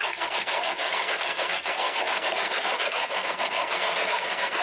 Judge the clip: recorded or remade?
remade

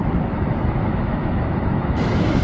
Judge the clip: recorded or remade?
remade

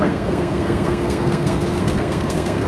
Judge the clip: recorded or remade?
remade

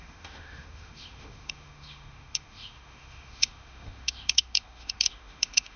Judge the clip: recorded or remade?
remade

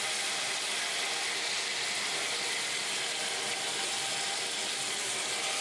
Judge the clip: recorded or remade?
recorded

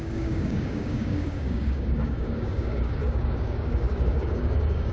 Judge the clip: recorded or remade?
remade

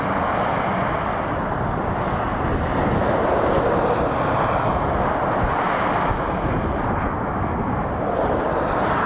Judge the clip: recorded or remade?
recorded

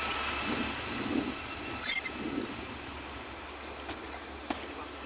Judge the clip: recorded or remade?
recorded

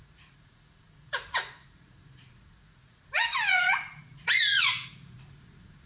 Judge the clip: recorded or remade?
remade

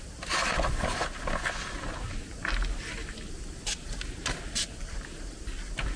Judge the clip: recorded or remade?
recorded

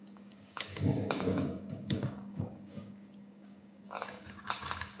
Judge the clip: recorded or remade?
remade